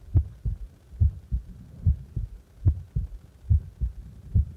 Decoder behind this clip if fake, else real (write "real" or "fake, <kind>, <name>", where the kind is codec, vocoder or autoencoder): real